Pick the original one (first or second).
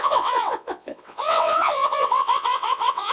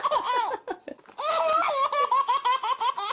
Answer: second